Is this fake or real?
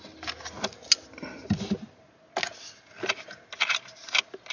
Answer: real